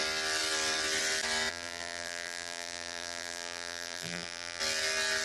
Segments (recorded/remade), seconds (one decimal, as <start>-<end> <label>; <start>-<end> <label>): 0.0-1.5 recorded; 1.5-4.6 remade; 4.6-5.2 recorded